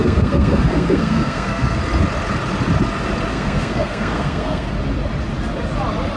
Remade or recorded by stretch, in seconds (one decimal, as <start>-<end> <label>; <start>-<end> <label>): 0.0-1.8 remade; 1.8-3.3 recorded; 3.3-4.7 remade; 4.7-6.2 recorded